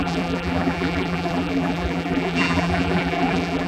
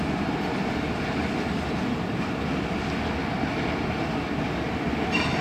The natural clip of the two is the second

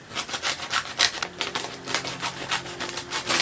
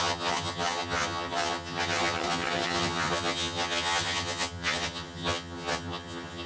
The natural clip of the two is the first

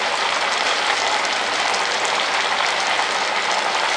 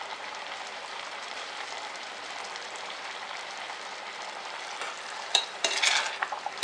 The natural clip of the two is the first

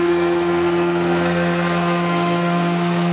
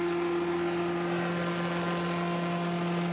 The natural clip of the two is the second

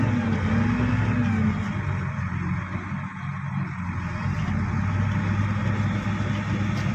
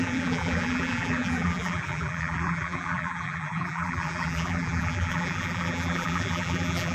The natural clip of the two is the first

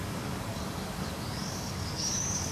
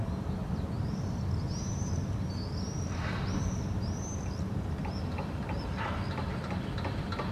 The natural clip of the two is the second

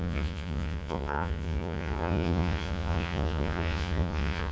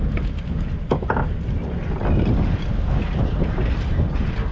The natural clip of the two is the second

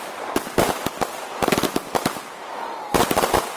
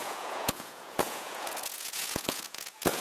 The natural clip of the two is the first